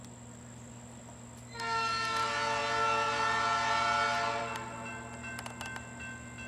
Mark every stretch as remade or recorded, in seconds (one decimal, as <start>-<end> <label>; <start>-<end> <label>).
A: 0.0-6.5 recorded

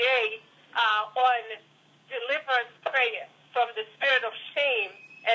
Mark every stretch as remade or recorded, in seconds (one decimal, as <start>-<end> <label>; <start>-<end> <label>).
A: 0.0-0.9 recorded; 0.9-4.1 remade; 4.1-5.3 recorded